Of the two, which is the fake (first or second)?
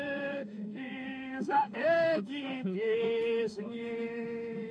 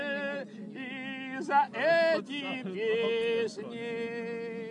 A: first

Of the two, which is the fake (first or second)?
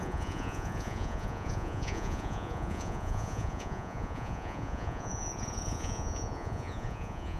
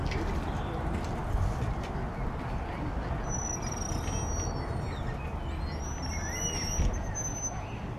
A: first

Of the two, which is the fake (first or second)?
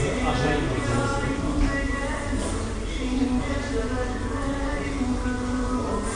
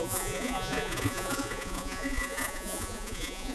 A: second